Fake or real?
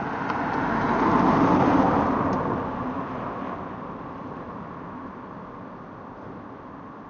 real